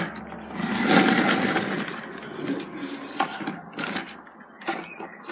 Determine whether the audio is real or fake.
real